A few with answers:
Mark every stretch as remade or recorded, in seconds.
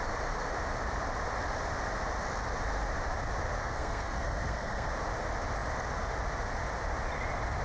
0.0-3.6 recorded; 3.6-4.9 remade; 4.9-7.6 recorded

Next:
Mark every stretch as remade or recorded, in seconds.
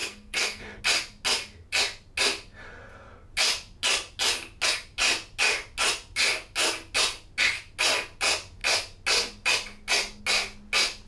0.0-0.8 remade; 0.8-11.1 recorded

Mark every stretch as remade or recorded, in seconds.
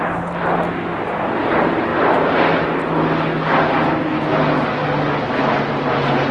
0.0-6.3 recorded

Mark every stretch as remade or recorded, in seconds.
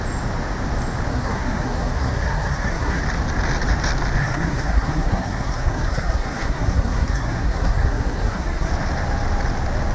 0.0-1.1 recorded; 1.1-3.0 remade; 3.0-4.2 recorded; 4.2-8.7 remade; 8.7-9.9 recorded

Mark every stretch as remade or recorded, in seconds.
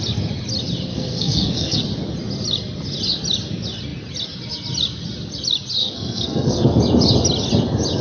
0.0-0.9 recorded; 0.9-1.8 remade; 1.8-5.8 recorded; 5.8-6.8 remade; 6.8-8.0 recorded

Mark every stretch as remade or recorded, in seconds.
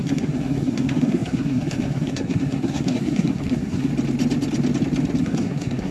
0.0-3.9 remade; 3.9-5.2 recorded; 5.2-5.9 remade